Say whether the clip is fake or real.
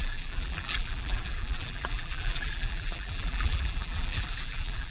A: fake